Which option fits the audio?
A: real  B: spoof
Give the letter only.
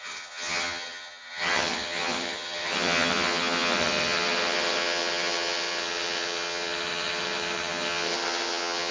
B